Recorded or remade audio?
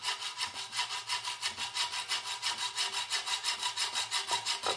recorded